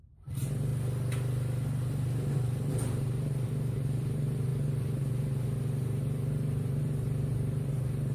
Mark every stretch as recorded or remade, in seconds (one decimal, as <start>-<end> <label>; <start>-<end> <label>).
0.0-0.7 remade; 0.7-2.4 recorded; 2.4-8.1 remade